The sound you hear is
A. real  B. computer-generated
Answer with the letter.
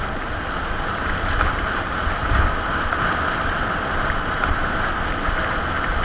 A